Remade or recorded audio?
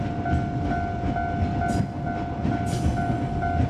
recorded